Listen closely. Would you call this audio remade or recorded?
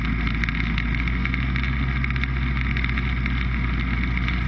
recorded